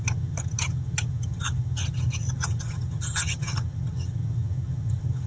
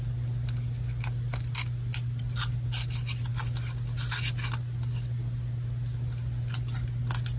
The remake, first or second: first